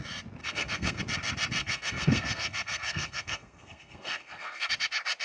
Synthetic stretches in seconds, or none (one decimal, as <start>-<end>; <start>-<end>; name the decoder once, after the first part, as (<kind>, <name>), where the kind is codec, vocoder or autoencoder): 0.4-1.0 (codec, SNAC); 1.6-4.7